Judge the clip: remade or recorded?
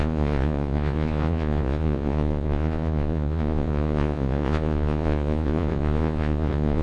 remade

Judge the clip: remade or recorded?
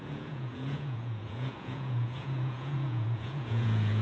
remade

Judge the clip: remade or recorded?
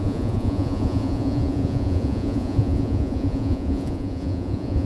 remade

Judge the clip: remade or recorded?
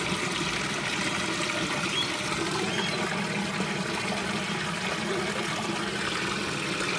recorded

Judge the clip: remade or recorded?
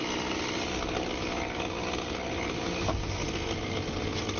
recorded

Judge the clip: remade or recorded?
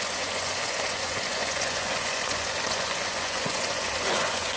remade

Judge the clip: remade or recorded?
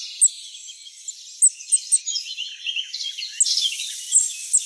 recorded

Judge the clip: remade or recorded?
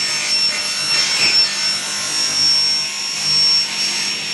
recorded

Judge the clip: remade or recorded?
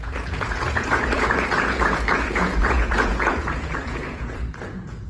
remade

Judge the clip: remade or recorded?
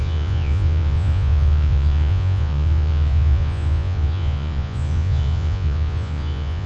remade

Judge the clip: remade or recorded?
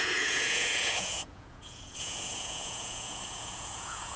remade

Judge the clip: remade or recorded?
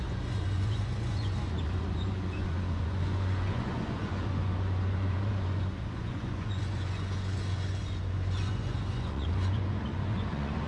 remade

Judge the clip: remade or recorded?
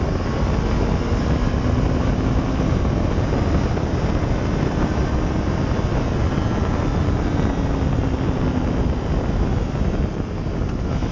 recorded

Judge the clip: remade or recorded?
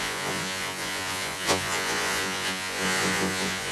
remade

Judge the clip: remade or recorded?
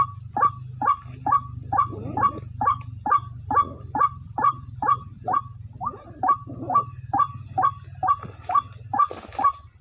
recorded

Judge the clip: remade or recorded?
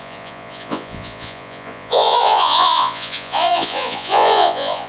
remade